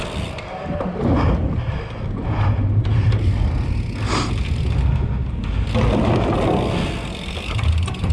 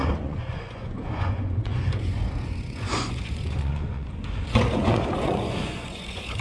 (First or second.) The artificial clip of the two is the second